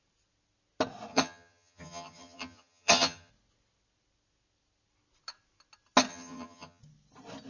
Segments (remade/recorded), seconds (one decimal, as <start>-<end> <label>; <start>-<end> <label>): 0.0-1.1 recorded; 1.1-3.3 remade; 3.3-6.1 recorded; 6.1-6.8 remade; 6.8-7.5 recorded